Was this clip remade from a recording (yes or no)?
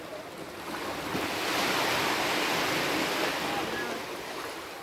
no